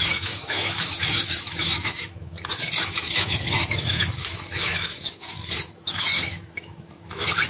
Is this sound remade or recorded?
remade